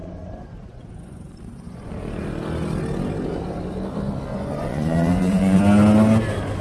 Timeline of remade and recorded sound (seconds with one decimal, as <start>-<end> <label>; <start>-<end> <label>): 0.0-1.9 remade; 1.9-4.3 recorded; 4.3-5.6 remade; 5.6-6.6 recorded